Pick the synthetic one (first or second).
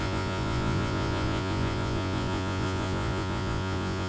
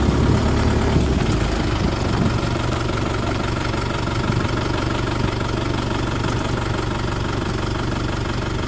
first